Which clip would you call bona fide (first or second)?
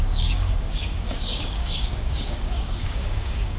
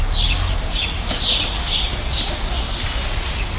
second